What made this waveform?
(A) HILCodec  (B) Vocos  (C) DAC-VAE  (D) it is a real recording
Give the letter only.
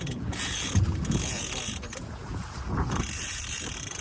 B